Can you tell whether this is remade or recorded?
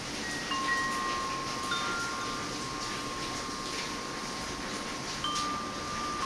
recorded